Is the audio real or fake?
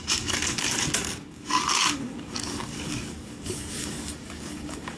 fake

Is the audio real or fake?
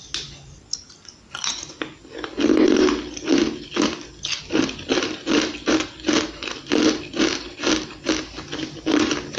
real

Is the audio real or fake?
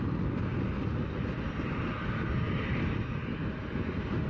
real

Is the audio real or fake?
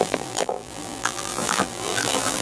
fake